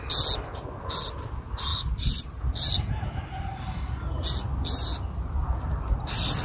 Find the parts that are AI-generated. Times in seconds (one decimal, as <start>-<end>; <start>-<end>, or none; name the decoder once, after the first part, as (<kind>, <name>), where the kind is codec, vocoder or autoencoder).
1.7-2.4 (vocoder, BigVGAN v2)